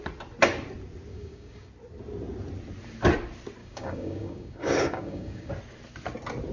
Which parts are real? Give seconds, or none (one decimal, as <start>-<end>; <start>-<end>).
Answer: 0.0-1.1; 1.7-3.6; 5.5-6.5